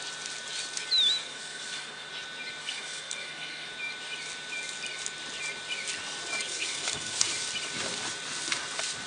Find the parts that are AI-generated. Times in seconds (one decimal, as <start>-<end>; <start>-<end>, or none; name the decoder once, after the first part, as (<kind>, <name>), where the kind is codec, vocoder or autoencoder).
1.2-2.1 (codec, SNAC); 2.6-3.7; 6.5-7.3